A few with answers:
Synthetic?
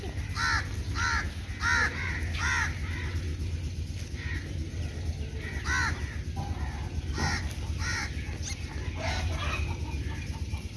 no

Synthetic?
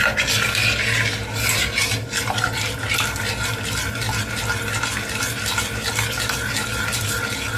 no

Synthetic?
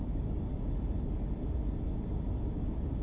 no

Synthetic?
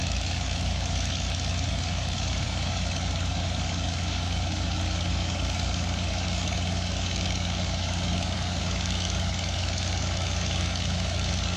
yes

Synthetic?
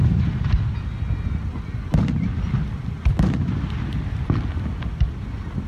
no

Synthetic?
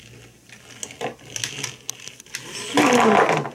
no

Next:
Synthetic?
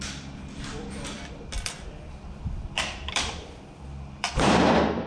yes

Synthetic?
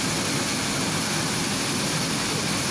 no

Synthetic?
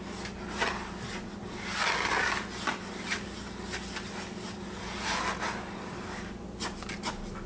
no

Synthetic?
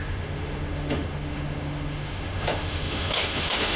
yes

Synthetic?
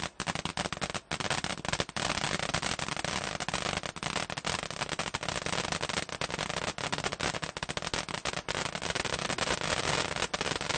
no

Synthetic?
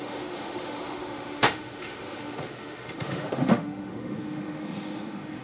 yes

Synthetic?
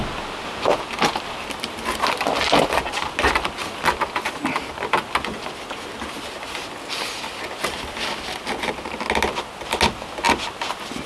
no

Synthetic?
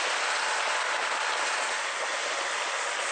no